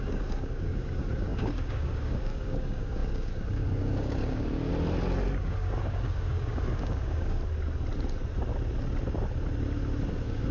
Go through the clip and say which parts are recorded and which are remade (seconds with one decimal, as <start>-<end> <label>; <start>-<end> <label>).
0.0-4.7 remade; 4.7-5.4 recorded; 5.4-7.4 remade; 7.4-10.1 recorded; 10.1-10.5 remade